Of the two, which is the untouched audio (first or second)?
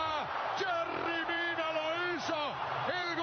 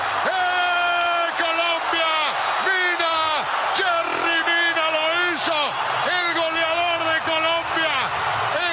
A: second